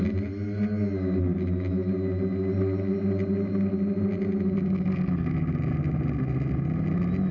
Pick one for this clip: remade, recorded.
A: recorded